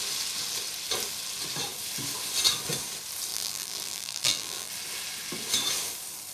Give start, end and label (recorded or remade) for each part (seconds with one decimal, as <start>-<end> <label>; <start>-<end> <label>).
0.0-3.3 recorded; 3.3-4.7 remade; 4.7-6.3 recorded